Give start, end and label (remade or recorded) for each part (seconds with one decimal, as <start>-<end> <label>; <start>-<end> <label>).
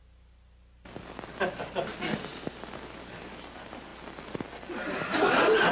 0.0-3.9 remade; 3.9-5.7 recorded